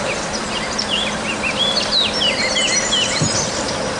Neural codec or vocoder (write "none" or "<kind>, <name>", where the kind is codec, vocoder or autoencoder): none